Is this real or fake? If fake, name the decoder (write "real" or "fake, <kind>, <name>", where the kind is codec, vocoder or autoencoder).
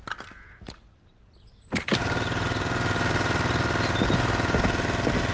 real